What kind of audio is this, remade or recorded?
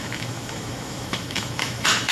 remade